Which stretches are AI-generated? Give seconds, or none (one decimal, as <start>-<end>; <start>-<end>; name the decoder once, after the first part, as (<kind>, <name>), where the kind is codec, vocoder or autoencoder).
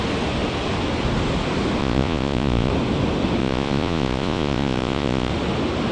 1.8-2.7 (vocoder, Vocos); 3.4-5.3